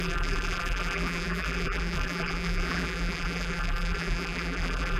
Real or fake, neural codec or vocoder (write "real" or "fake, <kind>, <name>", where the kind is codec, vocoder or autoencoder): fake, vocoder, BigVGAN v2